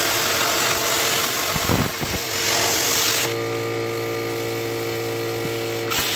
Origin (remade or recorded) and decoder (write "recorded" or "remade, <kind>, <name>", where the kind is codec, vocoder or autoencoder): recorded